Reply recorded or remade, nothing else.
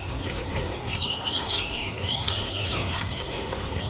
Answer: remade